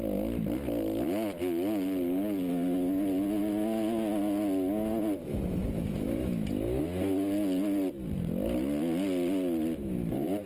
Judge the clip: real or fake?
real